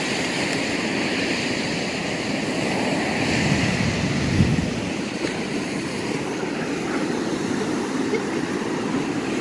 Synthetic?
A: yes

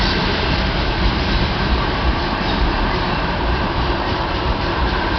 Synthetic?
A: yes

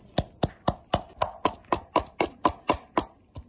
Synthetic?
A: no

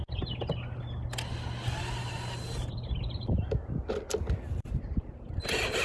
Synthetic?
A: no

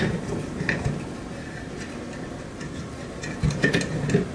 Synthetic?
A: no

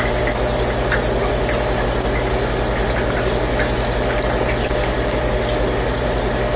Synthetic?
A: no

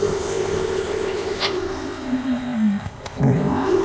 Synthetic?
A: yes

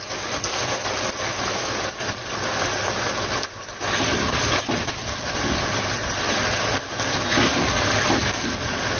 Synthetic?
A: no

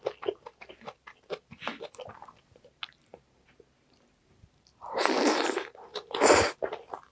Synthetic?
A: no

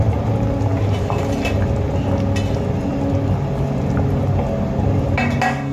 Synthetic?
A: no